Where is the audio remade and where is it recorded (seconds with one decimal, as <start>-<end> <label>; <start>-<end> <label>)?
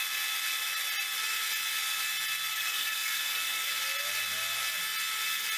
0.0-2.5 recorded; 2.5-3.7 remade; 3.7-5.6 recorded